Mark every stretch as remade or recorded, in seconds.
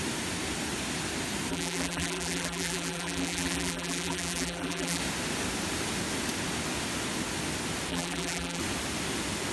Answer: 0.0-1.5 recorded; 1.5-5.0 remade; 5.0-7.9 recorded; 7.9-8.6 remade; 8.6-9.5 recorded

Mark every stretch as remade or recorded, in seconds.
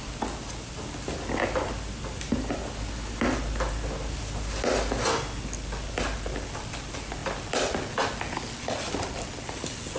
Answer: 0.0-10.0 recorded